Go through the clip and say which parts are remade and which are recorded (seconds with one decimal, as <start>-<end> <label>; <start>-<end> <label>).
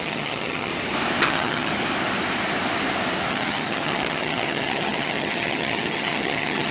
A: 0.0-0.7 remade; 0.7-1.2 recorded; 1.2-1.7 remade; 1.7-3.3 recorded; 3.3-6.7 remade